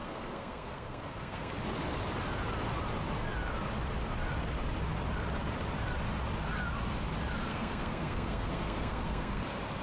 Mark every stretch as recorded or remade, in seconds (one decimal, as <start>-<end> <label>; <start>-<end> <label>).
0.0-1.5 remade; 1.5-7.5 recorded; 7.5-9.4 remade; 9.4-9.8 recorded